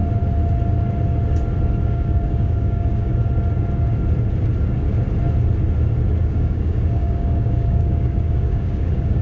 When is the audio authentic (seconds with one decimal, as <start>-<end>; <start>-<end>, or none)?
0.0-1.8; 3.1-6.2

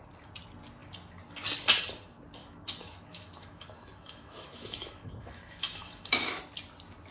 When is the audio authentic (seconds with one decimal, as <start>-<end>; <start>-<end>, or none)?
0.0-2.4; 6.4-7.1